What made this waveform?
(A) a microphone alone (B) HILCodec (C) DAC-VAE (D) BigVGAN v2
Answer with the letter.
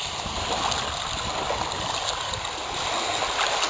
A